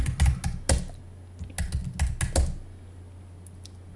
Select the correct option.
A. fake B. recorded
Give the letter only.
B